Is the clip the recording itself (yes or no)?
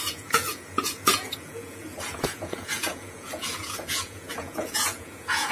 no